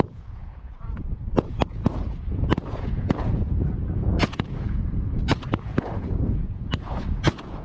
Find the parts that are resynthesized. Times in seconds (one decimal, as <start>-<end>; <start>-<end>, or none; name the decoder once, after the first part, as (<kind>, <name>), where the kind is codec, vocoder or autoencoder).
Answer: 0.0-7.6 (vocoder, Vocos)